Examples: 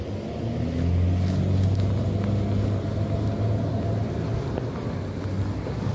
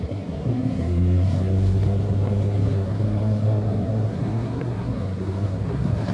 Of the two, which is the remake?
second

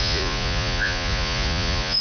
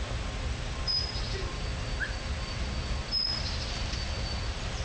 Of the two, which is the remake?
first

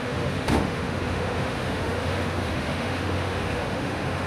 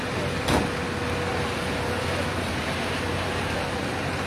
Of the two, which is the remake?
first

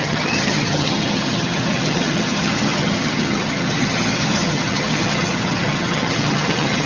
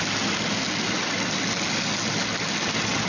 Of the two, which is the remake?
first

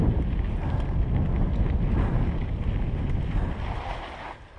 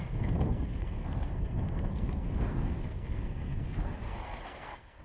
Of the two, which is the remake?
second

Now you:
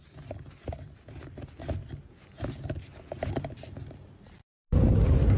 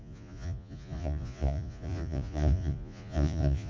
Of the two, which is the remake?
second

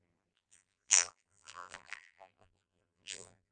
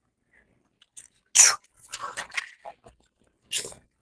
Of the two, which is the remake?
first